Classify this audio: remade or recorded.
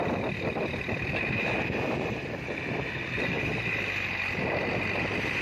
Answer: recorded